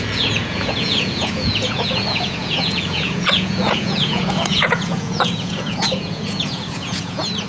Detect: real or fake fake